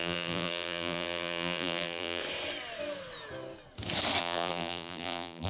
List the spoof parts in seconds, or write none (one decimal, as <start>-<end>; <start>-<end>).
0.0-2.2; 4.2-5.5